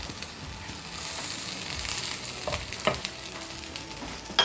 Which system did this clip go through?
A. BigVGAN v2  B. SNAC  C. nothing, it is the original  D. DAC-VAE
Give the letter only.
C